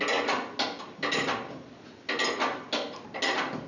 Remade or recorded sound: recorded